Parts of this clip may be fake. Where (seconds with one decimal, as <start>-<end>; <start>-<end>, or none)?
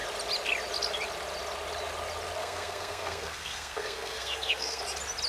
2.4-4.8